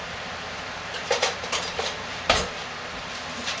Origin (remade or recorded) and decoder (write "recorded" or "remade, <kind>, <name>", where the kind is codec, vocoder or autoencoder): remade, vocoder, BigVGAN v2